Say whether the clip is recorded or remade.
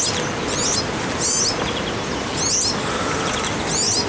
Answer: recorded